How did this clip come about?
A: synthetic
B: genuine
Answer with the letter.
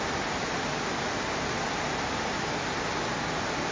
B